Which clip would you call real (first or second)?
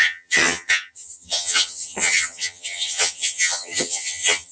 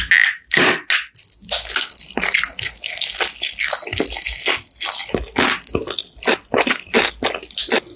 second